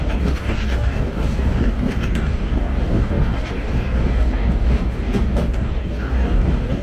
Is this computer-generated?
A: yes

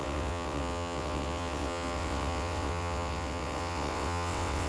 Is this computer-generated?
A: yes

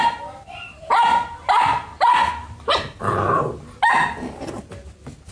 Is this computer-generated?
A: no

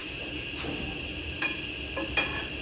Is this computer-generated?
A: no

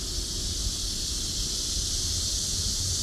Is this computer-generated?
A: no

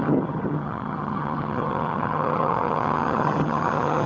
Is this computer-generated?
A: yes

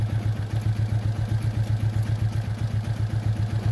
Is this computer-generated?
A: no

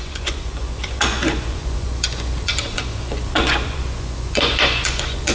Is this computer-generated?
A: yes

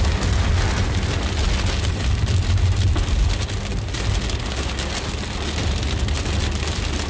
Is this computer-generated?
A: no